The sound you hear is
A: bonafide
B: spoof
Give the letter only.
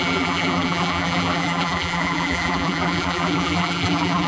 B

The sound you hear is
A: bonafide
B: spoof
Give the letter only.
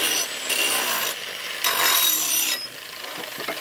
B